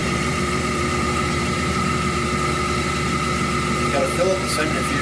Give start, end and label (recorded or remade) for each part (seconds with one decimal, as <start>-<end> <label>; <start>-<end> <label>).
0.0-2.3 remade; 2.3-5.0 recorded